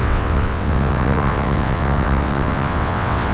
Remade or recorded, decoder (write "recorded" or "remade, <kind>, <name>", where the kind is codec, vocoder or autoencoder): remade, vocoder, WaveNeXt